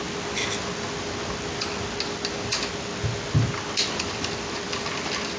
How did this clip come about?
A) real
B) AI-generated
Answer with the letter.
A